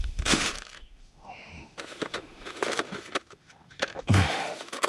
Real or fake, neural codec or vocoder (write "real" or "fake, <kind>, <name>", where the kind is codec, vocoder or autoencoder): fake, autoencoder, DAC-VAE